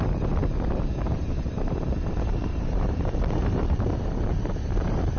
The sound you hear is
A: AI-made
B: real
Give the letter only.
A